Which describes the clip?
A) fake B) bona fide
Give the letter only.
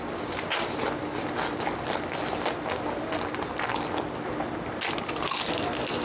B